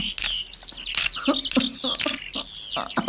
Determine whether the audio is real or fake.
real